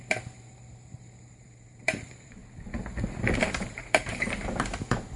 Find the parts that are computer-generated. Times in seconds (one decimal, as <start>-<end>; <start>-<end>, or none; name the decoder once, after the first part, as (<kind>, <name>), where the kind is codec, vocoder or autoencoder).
0.0-2.4 (vocoder, BigVGAN v2); 3.4-5.2